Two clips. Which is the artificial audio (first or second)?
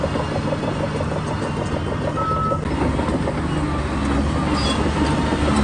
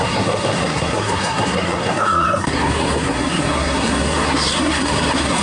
second